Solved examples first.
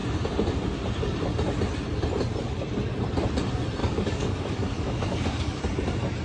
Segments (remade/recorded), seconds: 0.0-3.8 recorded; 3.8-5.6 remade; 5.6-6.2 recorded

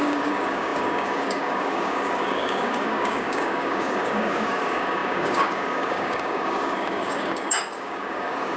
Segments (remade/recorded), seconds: 0.0-8.6 remade

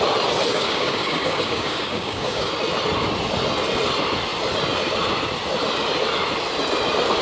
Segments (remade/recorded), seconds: 0.0-0.5 recorded; 0.5-2.5 remade; 2.5-7.2 recorded

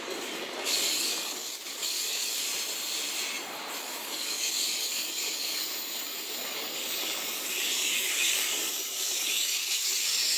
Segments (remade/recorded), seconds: 0.0-2.4 remade; 2.4-3.8 recorded; 3.8-10.4 remade

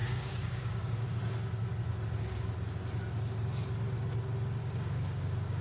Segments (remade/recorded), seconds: 0.0-1.1 remade; 1.1-4.6 recorded; 4.6-5.6 remade